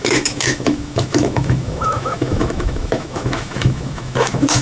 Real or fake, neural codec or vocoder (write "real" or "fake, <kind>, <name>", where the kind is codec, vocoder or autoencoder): fake, autoencoder, DAC-VAE